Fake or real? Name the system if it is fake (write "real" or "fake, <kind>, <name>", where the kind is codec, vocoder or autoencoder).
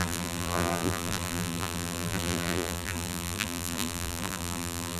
fake, vocoder, BigVGAN v2